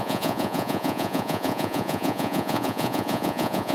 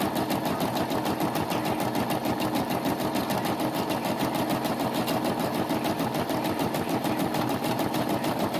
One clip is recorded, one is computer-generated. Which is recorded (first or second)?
second